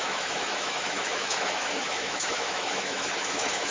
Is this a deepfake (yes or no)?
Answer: yes